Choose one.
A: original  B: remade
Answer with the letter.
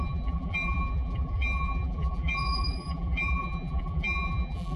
B